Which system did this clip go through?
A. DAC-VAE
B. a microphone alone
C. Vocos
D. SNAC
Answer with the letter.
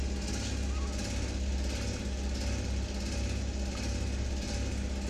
B